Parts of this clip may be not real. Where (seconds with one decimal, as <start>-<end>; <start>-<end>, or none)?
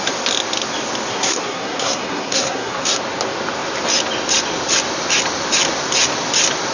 1.1-3.0